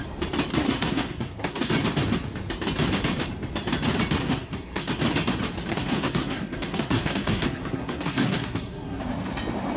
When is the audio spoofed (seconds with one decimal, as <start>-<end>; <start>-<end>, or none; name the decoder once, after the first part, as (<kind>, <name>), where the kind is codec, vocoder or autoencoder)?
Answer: 0.5-1.7 (codec, SNAC); 4.2-4.9; 5.7-9.0